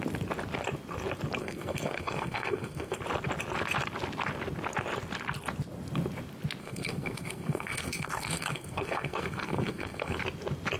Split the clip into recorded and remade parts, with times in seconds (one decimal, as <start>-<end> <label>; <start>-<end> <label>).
0.0-1.4 recorded; 1.4-3.0 remade; 3.0-6.6 recorded; 6.6-10.2 remade; 10.2-10.8 recorded